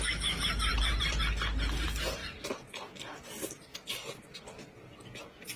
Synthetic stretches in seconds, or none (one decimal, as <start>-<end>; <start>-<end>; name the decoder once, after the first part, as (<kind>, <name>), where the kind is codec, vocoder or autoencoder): 0.7-1.3 (vocoder, BigVGAN v2)